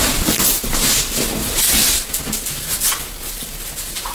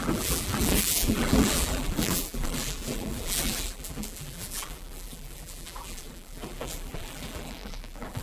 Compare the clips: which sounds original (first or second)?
first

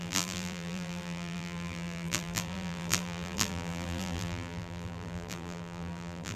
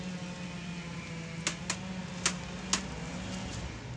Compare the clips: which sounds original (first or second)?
second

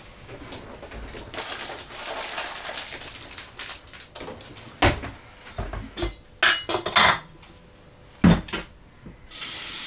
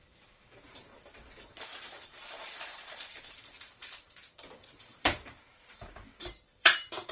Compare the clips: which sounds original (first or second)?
first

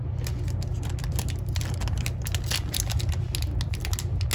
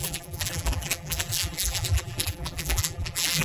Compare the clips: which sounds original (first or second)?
first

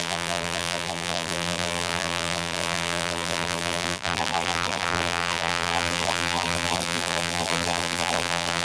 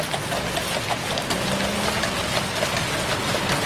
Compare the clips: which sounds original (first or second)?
second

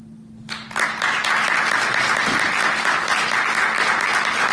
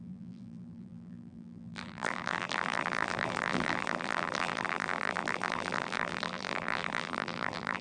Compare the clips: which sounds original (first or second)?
first